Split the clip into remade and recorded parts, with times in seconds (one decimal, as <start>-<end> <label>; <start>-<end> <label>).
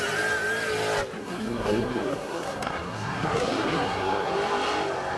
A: 0.0-1.2 recorded; 1.2-4.3 remade; 4.3-5.2 recorded